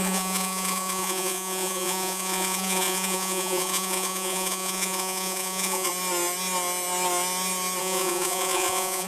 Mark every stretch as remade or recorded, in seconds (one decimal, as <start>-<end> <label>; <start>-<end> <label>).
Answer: 0.0-5.9 remade; 5.9-7.8 recorded; 7.8-9.1 remade